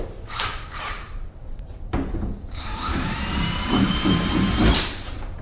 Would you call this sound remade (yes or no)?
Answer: yes